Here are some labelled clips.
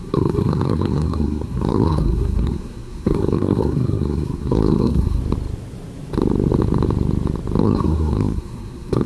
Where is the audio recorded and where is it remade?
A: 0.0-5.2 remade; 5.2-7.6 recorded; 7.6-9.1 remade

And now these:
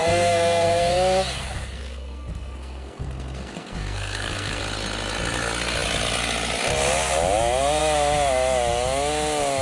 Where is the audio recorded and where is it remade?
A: 0.0-4.6 remade; 4.6-9.6 recorded

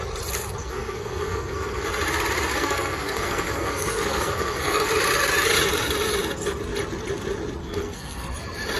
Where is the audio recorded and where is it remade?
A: 0.0-0.6 recorded; 0.6-1.9 remade; 1.9-2.5 recorded; 2.5-4.9 remade; 4.9-7.6 recorded; 7.6-8.3 remade; 8.3-8.8 recorded